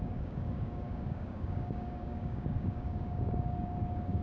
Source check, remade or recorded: remade